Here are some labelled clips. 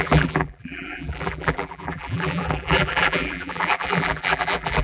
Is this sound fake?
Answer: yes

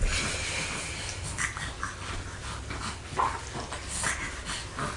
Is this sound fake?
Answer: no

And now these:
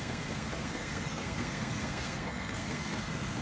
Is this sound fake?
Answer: yes